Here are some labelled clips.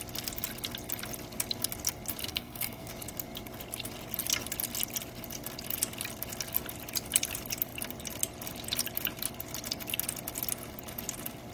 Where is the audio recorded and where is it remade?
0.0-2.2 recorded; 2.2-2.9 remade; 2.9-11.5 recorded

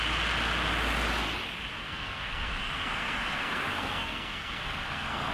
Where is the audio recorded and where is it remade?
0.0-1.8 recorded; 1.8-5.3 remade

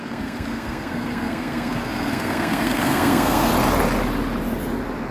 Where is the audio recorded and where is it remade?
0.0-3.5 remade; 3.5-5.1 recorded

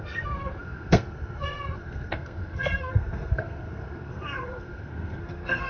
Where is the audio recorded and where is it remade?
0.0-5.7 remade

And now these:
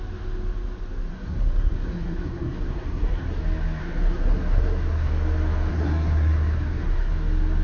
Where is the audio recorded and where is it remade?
0.0-1.1 recorded; 1.1-3.4 remade; 3.4-3.8 recorded; 3.8-5.1 remade; 5.1-5.7 recorded; 5.7-7.1 remade; 7.1-7.6 recorded